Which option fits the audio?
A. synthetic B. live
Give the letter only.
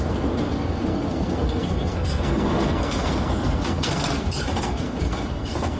A